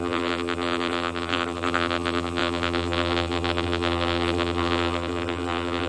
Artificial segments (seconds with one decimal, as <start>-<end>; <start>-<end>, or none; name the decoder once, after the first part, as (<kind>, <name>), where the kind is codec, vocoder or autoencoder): 0.0-5.9 (vocoder, BigVGAN v2)